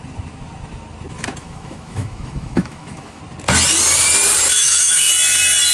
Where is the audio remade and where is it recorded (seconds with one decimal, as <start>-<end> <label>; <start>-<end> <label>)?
0.0-1.4 recorded; 1.4-3.2 remade; 3.2-4.5 recorded; 4.5-5.1 remade; 5.1-5.7 recorded